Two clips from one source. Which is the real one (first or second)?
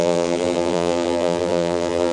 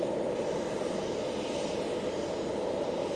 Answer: second